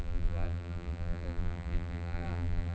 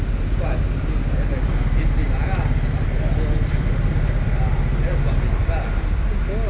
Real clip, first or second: second